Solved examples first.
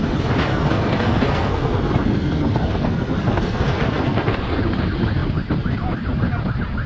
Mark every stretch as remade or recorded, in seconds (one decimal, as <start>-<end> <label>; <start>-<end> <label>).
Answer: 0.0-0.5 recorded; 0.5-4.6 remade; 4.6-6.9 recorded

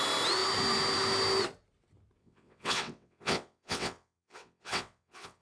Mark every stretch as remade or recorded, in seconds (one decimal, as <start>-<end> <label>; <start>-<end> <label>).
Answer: 0.0-2.2 recorded; 2.2-5.4 remade

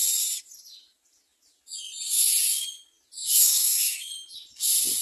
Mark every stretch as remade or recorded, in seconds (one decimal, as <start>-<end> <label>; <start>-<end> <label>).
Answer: 0.0-3.2 recorded; 3.2-4.1 remade; 4.1-5.0 recorded

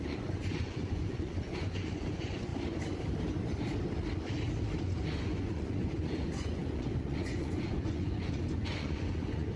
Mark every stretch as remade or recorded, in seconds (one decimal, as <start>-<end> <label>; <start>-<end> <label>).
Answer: 0.0-2.5 remade; 2.5-4.8 recorded; 4.8-9.6 remade

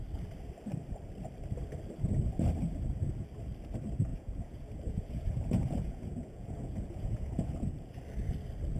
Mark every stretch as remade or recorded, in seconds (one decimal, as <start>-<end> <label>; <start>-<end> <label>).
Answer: 0.0-4.1 recorded; 4.1-8.0 remade; 8.0-8.8 recorded

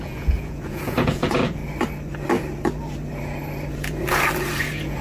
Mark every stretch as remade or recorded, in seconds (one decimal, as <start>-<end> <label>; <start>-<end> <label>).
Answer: 0.0-1.6 remade; 1.6-4.6 recorded; 4.6-5.0 remade

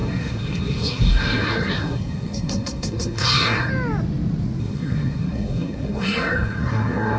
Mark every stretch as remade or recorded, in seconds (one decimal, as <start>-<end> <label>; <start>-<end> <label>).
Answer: 0.0-3.7 remade; 3.7-4.6 recorded; 4.6-7.2 remade

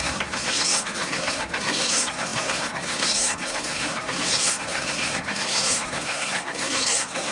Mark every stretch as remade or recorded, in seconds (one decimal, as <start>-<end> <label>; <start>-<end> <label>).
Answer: 0.0-7.3 remade